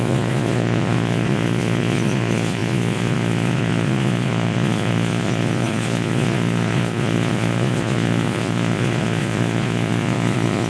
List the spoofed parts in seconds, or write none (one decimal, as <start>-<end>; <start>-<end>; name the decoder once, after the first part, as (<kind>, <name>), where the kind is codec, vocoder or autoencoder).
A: 0.0-10.7 (vocoder, Vocos)